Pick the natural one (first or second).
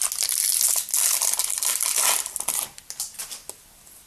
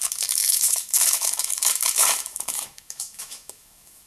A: first